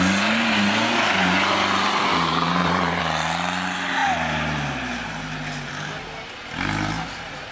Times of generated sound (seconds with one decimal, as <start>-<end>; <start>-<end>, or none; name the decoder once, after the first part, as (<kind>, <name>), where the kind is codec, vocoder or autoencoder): 2.1-3.0 (vocoder, BigVGAN v2)